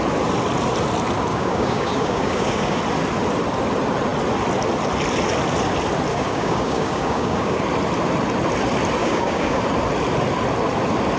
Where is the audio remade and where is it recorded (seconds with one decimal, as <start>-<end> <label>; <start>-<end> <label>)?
0.0-1.3 recorded; 1.3-2.8 remade; 2.8-6.1 recorded; 6.1-7.6 remade; 7.6-9.0 recorded; 9.0-9.6 remade; 9.6-11.2 recorded